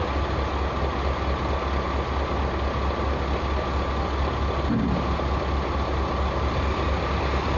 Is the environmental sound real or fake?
real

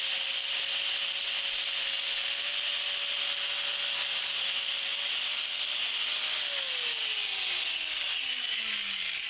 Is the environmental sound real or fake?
real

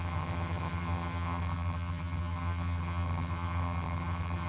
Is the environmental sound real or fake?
fake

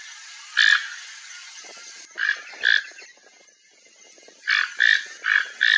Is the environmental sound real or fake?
real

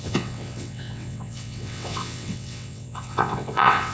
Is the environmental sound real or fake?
fake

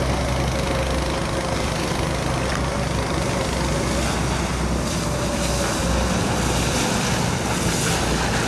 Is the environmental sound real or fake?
real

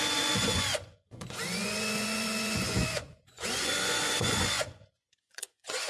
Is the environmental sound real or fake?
fake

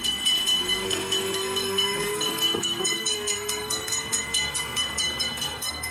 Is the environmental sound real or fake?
fake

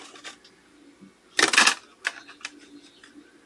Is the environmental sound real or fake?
real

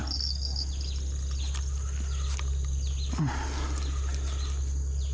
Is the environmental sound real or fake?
real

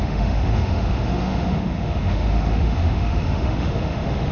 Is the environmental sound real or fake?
fake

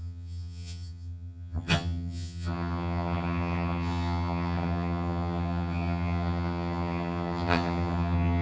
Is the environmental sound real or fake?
fake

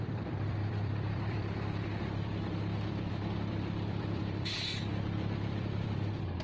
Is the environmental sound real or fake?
fake